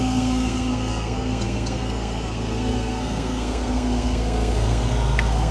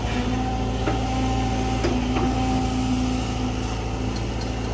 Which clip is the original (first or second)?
second